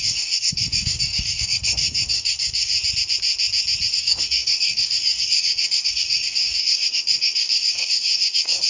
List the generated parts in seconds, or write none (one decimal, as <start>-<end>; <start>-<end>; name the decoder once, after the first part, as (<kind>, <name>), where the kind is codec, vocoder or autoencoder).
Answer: 0.0-2.7 (codec, DAC); 3.9-8.7